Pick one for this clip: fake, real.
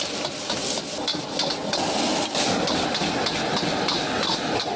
real